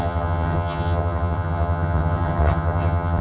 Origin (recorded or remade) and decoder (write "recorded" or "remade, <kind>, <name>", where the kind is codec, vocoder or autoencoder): remade, vocoder, HiFi-GAN